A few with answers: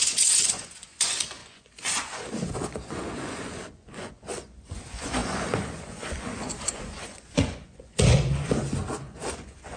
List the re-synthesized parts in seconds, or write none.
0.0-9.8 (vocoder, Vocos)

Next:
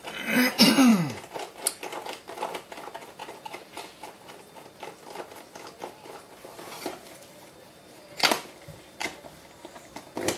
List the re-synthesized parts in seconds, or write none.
none

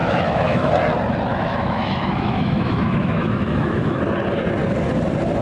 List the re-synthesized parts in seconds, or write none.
0.0-0.7 (autoencoder, DAC-VAE); 1.3-4.0

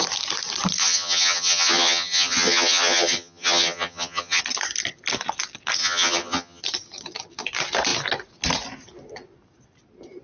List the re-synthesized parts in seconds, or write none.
0.8-4.4 (vocoder, HiFi-GAN); 5.8-6.6

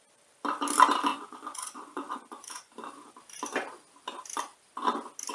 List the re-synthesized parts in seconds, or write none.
1.1-2.7 (vocoder, Vocos)